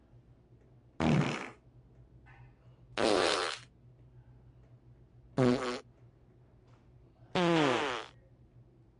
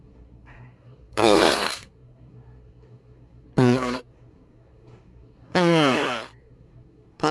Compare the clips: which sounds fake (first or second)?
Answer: second